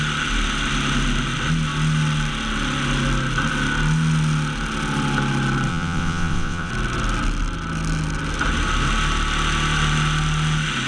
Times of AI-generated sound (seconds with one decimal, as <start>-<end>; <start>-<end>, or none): 5.7-6.7